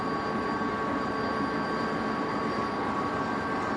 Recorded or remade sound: recorded